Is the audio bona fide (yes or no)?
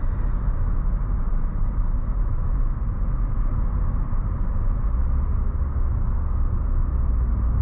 yes